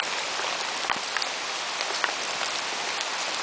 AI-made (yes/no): no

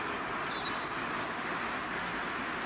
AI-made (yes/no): no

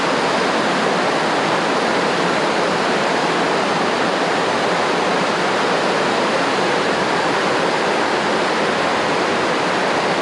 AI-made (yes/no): no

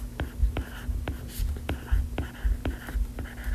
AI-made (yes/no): no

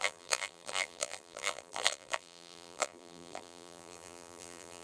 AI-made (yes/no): yes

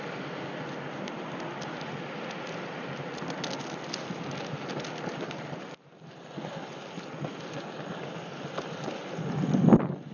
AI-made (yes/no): no